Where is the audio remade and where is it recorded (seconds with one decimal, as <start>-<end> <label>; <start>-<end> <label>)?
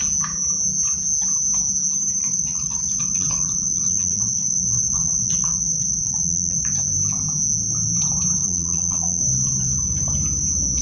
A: 0.0-2.2 recorded; 2.2-6.7 remade; 6.7-8.4 recorded; 8.4-9.2 remade; 9.2-10.8 recorded